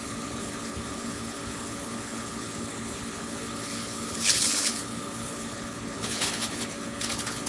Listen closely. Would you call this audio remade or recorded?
remade